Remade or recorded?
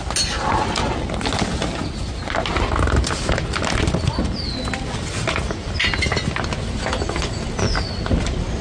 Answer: recorded